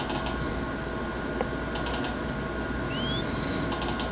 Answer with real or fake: real